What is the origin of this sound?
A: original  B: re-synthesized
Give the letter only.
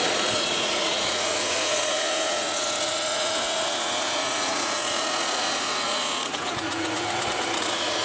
B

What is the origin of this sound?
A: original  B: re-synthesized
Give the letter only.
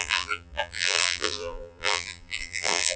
B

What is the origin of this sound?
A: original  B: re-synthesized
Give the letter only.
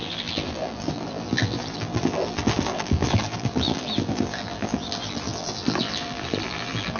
B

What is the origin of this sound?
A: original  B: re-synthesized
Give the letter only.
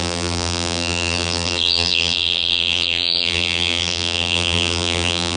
B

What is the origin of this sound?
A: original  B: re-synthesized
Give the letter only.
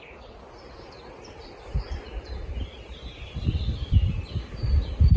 A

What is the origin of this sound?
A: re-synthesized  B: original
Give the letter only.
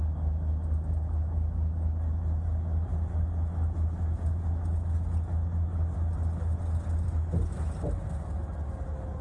B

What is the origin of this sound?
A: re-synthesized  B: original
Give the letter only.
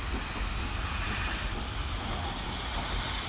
B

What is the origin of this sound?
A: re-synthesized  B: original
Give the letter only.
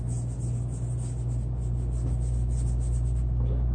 B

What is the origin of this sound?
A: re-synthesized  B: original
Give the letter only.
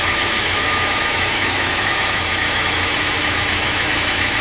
A